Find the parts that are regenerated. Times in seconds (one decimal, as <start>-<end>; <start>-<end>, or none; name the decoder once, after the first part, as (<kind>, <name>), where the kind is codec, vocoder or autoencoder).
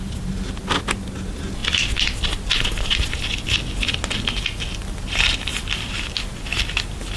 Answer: none